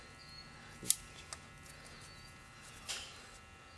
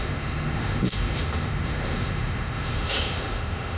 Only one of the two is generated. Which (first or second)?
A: second